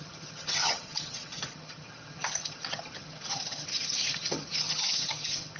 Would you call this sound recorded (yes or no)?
no